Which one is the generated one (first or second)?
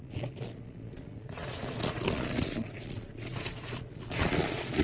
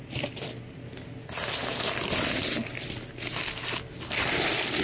first